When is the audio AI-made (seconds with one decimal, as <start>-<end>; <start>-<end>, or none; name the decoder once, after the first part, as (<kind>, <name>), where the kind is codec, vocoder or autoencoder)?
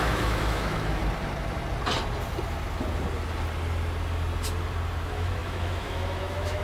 0.0-1.0 (autoencoder, DAC-VAE); 5.0-6.6